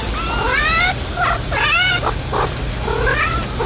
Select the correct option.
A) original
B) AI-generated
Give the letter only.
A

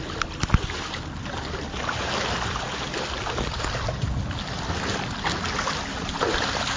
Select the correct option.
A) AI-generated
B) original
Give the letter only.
B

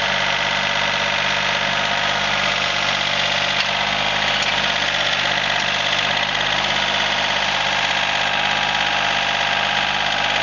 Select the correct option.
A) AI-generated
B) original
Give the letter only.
B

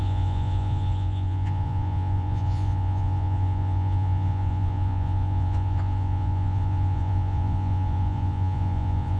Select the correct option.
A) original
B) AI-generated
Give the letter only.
B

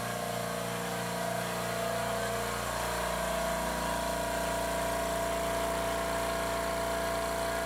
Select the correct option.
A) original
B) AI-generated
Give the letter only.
A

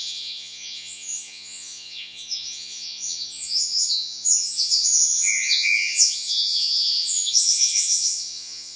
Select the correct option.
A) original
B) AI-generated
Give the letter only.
B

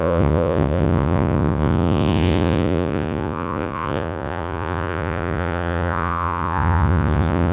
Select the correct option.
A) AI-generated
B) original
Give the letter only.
A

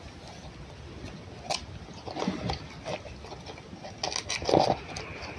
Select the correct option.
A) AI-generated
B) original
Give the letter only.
B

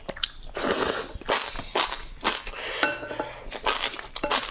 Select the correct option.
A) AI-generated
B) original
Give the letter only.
B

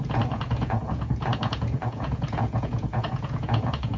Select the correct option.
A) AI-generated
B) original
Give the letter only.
A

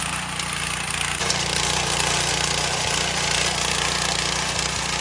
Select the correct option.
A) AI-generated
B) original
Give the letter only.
B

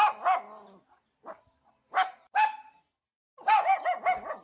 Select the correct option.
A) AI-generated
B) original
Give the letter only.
B